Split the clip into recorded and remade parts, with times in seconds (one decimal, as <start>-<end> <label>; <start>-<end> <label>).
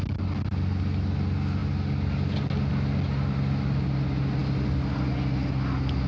0.0-6.1 recorded